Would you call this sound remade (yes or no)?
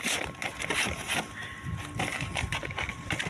no